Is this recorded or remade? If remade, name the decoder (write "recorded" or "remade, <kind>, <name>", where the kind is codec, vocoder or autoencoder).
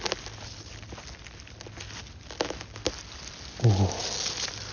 recorded